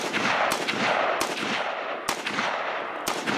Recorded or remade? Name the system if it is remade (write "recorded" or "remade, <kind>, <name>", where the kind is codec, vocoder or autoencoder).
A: recorded